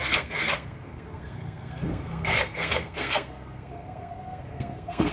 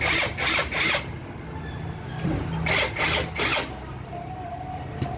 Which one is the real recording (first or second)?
second